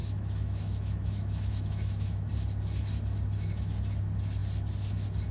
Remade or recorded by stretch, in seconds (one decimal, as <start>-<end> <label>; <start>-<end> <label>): 0.0-2.3 remade; 2.3-5.3 recorded